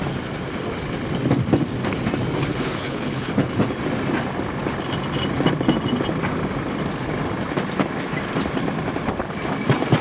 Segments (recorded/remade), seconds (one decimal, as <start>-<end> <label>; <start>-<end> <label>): 0.0-2.5 recorded; 2.5-3.6 remade; 3.6-10.0 recorded